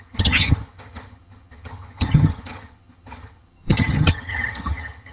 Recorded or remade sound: remade